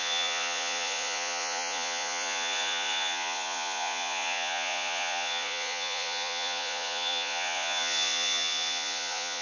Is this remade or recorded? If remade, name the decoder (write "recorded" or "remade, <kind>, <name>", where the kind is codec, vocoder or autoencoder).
remade, vocoder, Vocos